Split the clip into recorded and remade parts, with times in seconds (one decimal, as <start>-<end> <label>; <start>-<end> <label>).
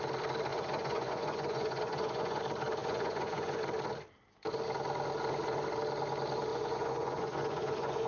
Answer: 0.0-0.5 recorded; 0.5-2.4 remade; 2.4-2.8 recorded; 2.8-3.6 remade; 3.6-6.5 recorded; 6.5-8.1 remade